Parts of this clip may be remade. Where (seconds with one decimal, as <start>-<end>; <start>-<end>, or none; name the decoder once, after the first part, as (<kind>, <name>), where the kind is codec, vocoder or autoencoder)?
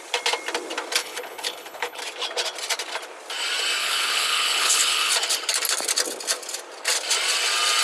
1.0-2.0 (codec, HILCodec); 3.8-5.1